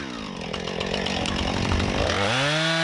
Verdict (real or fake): real